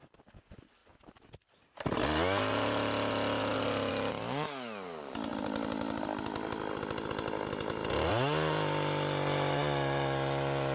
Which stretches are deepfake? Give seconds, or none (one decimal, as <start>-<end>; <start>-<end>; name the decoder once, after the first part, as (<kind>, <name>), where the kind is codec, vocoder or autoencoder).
none